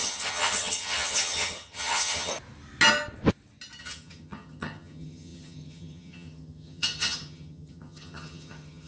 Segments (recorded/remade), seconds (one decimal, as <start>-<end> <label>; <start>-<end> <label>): 0.0-2.3 remade; 2.3-3.8 recorded; 3.8-8.9 remade